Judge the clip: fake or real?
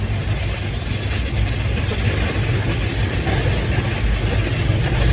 real